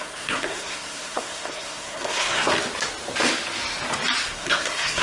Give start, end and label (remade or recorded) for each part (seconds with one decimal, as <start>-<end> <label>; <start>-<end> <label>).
0.0-2.5 remade; 2.5-4.3 recorded; 4.3-5.0 remade